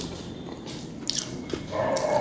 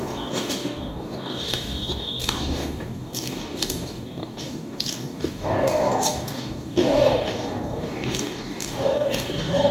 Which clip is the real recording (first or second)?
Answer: first